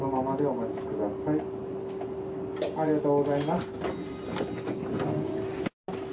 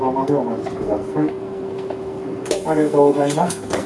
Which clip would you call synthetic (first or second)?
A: second